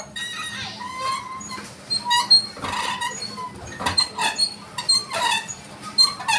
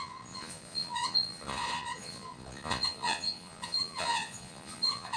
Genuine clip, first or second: first